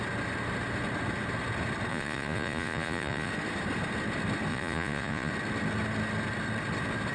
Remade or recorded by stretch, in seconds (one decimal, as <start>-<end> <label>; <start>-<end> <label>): 0.0-1.9 recorded; 1.9-3.3 remade; 3.3-4.5 recorded; 4.5-5.3 remade; 5.3-7.1 recorded